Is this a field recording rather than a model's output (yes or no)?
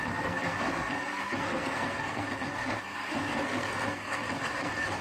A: no